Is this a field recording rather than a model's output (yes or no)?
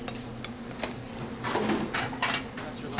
yes